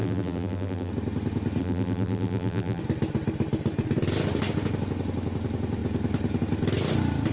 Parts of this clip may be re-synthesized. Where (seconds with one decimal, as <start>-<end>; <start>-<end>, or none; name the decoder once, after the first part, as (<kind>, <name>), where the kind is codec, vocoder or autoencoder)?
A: 0.0-0.9 (vocoder, BigVGAN v2); 1.6-2.8